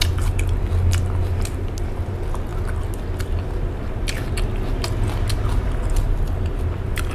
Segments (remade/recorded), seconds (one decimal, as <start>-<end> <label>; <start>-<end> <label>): 0.0-7.1 recorded